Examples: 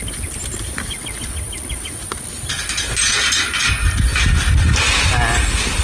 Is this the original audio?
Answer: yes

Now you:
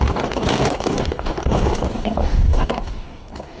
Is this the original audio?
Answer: no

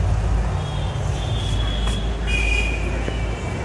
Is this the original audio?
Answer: yes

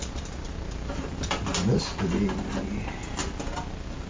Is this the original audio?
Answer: yes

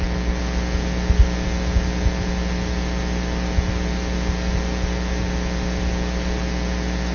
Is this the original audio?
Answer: yes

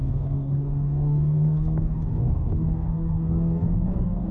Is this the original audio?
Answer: no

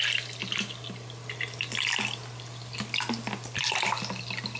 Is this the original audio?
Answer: yes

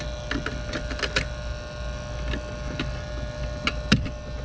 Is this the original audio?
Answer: yes